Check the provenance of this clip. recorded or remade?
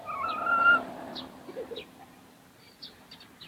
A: recorded